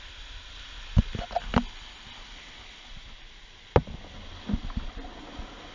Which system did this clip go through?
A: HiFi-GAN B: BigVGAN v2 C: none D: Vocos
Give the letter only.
C